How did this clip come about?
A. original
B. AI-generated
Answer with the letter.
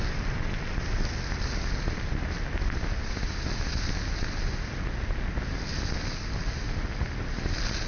A